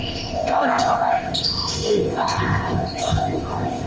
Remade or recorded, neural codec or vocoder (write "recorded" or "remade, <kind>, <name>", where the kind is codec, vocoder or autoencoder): remade, codec, ZipCodec